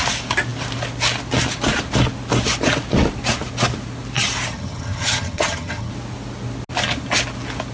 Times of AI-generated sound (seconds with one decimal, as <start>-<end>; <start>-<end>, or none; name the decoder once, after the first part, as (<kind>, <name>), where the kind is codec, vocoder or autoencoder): 4.5-5.9 (vocoder, HiFi-GAN)